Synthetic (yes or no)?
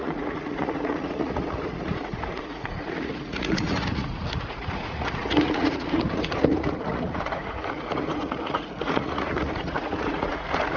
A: yes